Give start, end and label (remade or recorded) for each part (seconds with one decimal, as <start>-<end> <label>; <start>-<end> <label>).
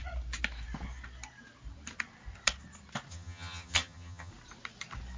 0.0-3.1 recorded; 3.1-4.3 remade; 4.3-5.2 recorded